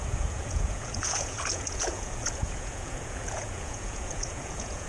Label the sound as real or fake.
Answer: fake